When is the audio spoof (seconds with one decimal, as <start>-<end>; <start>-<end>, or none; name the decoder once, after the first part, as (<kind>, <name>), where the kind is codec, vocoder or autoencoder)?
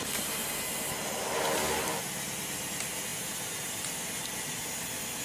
3.1-4.5 (vocoder, BigVGAN v2)